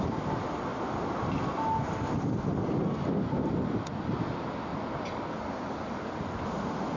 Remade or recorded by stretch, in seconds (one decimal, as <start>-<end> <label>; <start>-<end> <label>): 0.0-7.0 recorded